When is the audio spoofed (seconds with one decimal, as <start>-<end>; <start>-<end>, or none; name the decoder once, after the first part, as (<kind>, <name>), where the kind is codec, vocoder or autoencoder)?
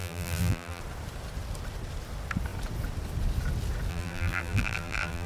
0.0-0.8 (vocoder, BigVGAN v2); 3.9-5.3